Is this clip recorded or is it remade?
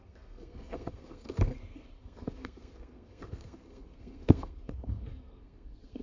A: remade